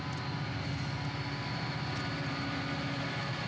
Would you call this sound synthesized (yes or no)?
no